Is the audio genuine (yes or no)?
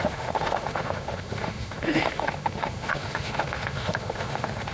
no